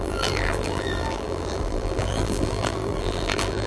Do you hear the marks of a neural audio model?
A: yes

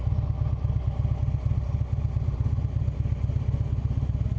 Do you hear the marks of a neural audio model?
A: no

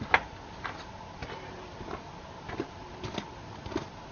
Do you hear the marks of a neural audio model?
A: no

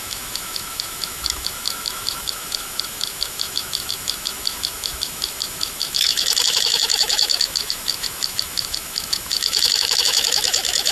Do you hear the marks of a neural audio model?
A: yes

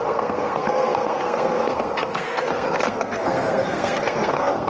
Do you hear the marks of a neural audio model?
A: yes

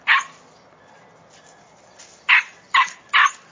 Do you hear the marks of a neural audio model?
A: no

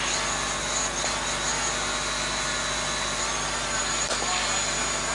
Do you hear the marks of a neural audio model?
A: no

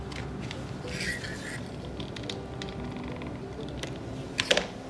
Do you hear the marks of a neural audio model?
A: no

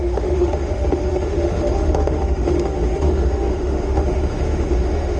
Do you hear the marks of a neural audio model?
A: yes